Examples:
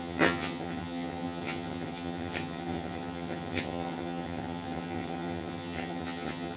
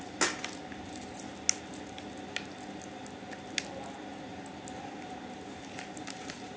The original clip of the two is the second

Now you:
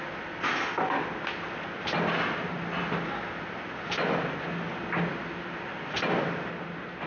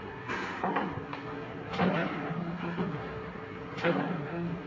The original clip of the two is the first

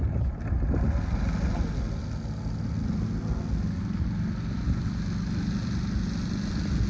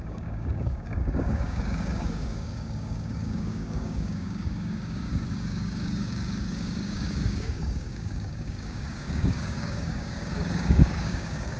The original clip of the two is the first